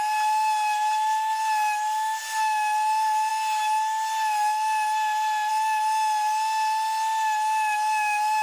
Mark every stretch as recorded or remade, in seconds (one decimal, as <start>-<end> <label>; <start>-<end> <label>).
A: 0.0-8.4 recorded